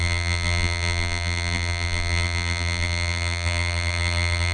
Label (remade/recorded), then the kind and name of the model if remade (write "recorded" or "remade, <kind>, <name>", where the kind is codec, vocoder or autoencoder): remade, vocoder, BigVGAN v2